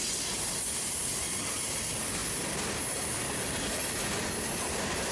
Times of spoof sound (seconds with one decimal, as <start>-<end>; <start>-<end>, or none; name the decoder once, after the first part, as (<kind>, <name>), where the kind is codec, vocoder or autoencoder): none